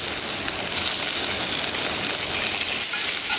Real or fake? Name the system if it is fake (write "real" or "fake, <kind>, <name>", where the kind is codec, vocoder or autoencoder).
real